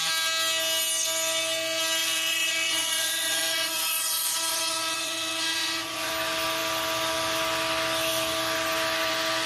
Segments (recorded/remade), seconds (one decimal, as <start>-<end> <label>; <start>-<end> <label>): 0.0-2.0 recorded; 2.0-6.1 remade; 6.1-9.5 recorded